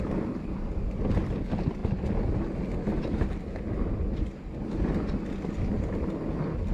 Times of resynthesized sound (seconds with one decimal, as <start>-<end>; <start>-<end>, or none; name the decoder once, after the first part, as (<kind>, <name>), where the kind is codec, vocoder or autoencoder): none